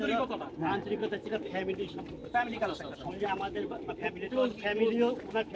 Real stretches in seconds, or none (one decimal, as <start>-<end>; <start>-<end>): 0.0-1.0; 1.6-5.6